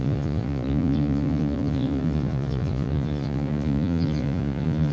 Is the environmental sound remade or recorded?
remade